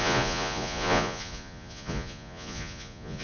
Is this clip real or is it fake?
fake